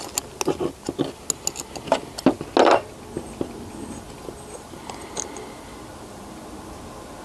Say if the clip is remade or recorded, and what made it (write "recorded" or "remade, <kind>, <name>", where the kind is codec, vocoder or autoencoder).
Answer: recorded